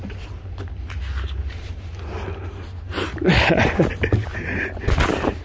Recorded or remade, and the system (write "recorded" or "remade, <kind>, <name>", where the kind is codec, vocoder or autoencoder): recorded